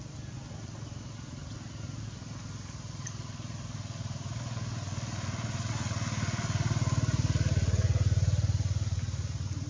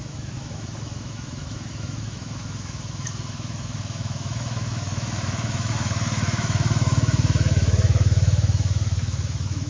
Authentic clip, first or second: first